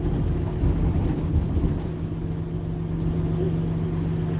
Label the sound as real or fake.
real